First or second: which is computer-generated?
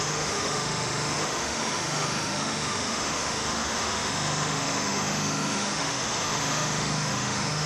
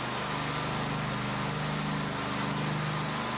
first